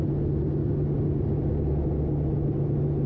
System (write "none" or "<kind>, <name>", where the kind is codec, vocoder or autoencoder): none